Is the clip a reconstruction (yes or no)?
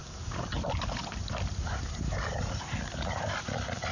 no